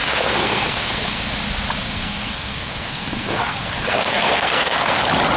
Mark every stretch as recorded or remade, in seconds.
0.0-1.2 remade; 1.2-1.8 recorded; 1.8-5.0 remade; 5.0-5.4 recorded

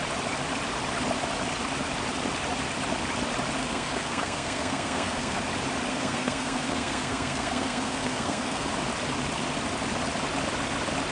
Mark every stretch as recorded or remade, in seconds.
0.0-3.6 recorded; 3.6-5.4 remade; 5.4-5.9 recorded; 5.9-8.7 remade; 8.7-11.1 recorded

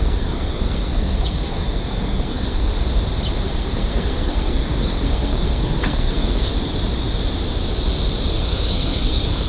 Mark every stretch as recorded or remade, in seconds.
0.0-2.7 remade; 2.7-3.4 recorded; 3.4-6.5 remade; 6.5-8.3 recorded; 8.3-9.5 remade

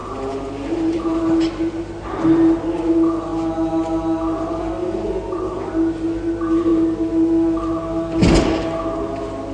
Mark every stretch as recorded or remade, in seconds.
0.0-9.5 recorded

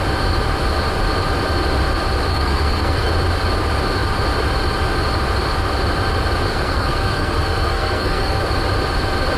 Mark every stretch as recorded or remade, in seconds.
0.0-2.3 recorded; 2.3-3.1 remade; 3.1-6.5 recorded; 6.5-8.4 remade; 8.4-9.4 recorded

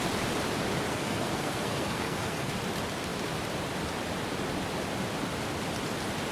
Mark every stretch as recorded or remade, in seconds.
0.0-0.9 recorded; 0.9-2.5 remade; 2.5-6.3 recorded

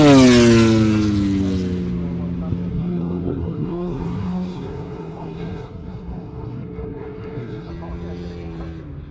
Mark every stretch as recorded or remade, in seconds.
0.0-2.7 recorded; 2.7-7.7 remade; 7.7-9.1 recorded

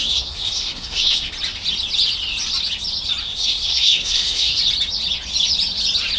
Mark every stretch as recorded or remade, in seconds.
0.0-1.3 remade; 1.3-3.2 recorded; 3.2-4.6 remade; 4.6-6.2 recorded